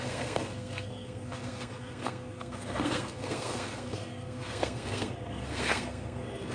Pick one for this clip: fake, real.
fake